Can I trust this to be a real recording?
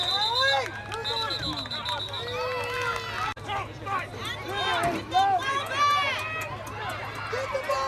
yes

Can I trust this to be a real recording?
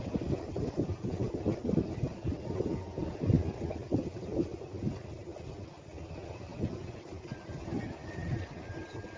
yes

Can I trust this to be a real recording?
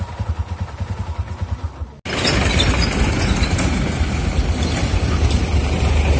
yes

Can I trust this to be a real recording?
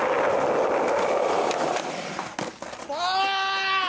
yes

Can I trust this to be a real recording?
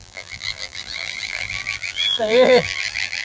no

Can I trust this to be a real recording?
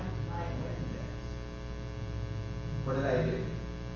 yes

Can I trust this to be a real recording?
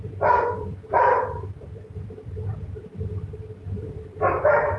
no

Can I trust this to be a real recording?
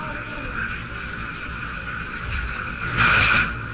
no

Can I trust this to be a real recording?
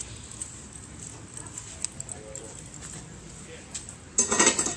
yes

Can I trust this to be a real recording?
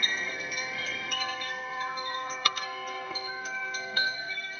no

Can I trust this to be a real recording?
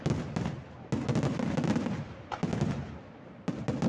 yes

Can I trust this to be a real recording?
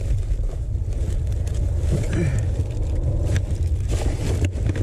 yes